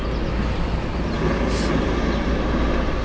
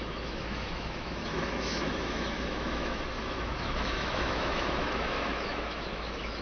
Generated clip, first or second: second